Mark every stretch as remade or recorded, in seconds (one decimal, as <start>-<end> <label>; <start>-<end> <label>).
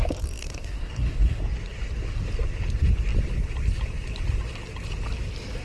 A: 0.0-0.4 recorded; 0.4-1.4 remade; 1.4-5.6 recorded